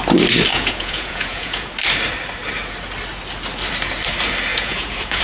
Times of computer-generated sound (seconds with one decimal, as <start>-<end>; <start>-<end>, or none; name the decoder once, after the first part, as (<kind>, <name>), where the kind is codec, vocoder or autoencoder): 0.5-1.7 (vocoder, Vocos); 4.5-5.2